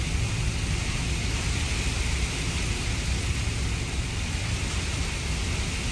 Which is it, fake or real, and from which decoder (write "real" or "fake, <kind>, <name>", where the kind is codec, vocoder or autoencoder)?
real